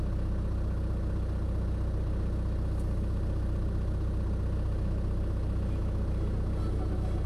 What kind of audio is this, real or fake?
real